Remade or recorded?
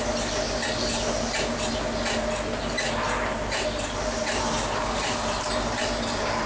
recorded